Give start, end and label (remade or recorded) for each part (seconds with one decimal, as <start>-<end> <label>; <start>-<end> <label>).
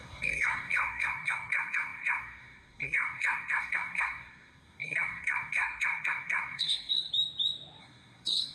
0.0-7.1 remade; 7.1-7.8 recorded; 7.8-8.5 remade